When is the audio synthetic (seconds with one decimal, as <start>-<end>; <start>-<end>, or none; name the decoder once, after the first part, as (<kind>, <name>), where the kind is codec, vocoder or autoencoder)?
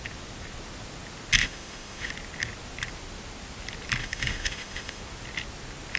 1.4-2.1 (autoencoder, DAC-VAE); 4.0-5.0